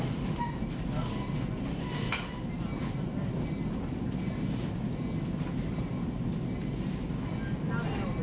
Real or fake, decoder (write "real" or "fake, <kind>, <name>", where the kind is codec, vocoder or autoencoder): real